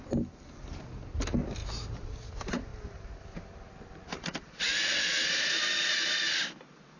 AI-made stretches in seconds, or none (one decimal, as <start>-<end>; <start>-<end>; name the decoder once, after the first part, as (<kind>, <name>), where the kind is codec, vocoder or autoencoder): none